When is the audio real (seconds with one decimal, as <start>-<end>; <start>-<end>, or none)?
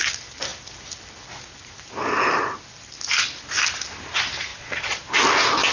0.0-4.5; 5.0-5.7